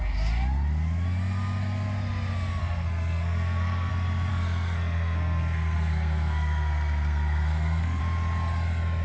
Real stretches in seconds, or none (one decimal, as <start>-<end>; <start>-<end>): 0.0-2.6; 3.9-4.3; 8.0-9.0